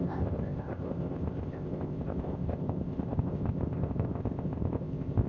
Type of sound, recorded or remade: remade